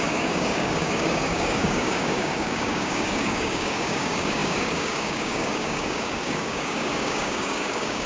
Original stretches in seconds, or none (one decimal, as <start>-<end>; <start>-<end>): none